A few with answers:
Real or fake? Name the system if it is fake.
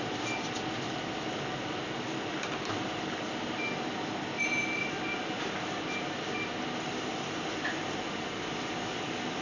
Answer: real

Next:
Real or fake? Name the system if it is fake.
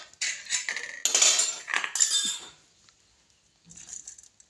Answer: real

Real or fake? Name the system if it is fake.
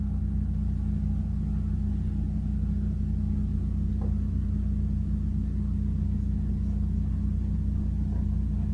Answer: real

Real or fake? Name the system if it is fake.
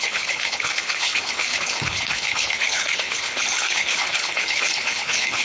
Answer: fake, codec, HILCodec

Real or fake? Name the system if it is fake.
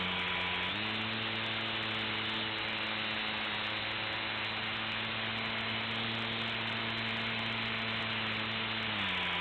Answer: real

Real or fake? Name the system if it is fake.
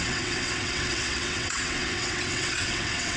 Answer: fake, vocoder, WaveNeXt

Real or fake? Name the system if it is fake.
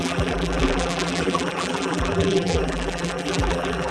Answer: fake, vocoder, BigVGAN v2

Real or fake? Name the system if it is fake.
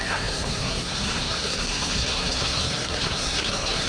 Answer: fake, codec, SNAC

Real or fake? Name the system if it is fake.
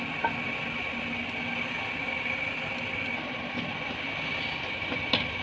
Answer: real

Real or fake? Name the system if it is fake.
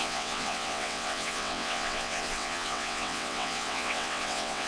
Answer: fake, vocoder, WaveNeXt